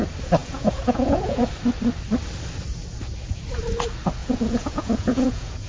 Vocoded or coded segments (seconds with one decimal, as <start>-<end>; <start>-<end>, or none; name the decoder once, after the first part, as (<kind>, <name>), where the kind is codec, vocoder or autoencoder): 0.4-1.5 (vocoder, Vocos); 4.2-5.7